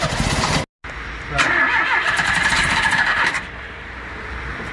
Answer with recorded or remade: recorded